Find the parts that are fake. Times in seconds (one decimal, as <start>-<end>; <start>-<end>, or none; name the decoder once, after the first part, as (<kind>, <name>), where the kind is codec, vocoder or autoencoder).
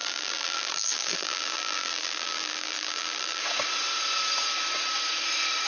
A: 0.0-3.4 (vocoder, BigVGAN v2)